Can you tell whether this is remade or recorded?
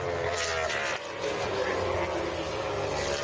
recorded